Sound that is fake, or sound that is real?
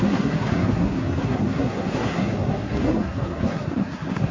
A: fake